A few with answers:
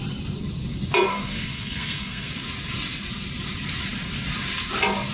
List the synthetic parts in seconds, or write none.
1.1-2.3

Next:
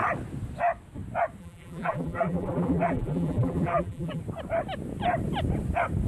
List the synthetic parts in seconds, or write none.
1.4-4.2